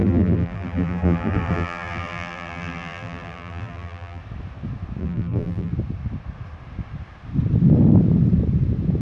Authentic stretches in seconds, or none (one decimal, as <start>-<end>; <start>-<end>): 4.2-5.0; 5.7-9.0